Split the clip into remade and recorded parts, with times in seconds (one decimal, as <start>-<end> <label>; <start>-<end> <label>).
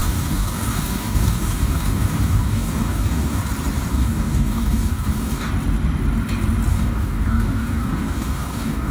0.0-3.4 remade; 3.4-3.9 recorded; 3.9-5.5 remade; 5.5-6.7 recorded; 6.7-8.9 remade